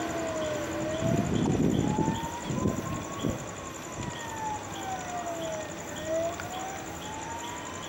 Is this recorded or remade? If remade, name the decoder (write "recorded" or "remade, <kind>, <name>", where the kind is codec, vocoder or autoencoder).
recorded